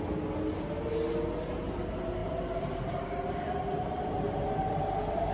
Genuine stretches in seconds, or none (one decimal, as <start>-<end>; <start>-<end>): 0.0-2.2